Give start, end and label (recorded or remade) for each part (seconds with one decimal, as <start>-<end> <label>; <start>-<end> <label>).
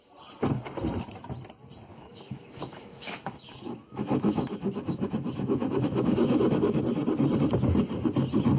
0.0-1.9 recorded; 1.9-6.8 remade; 6.8-8.6 recorded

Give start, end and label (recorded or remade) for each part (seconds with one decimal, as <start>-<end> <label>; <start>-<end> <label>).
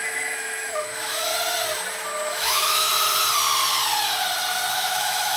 0.0-1.3 remade; 1.3-2.3 recorded; 2.3-2.9 remade; 2.9-4.7 recorded; 4.7-5.4 remade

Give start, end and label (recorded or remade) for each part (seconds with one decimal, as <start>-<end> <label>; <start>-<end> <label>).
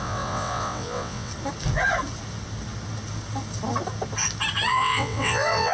0.0-1.3 remade; 1.3-4.7 recorded; 4.7-5.7 remade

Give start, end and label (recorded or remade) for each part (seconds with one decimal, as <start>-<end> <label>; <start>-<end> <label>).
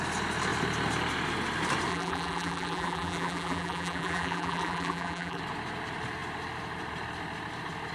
0.0-1.9 recorded; 1.9-5.4 remade; 5.4-7.9 recorded